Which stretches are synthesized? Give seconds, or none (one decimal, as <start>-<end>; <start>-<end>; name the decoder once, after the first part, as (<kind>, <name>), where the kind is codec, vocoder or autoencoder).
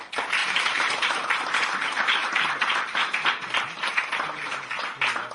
0.4-1.4 (vocoder, BigVGAN v2); 2.2-3.1